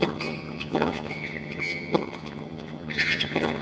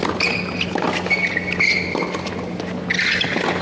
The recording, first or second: second